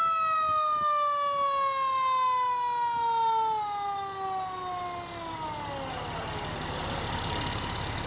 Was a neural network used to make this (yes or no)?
no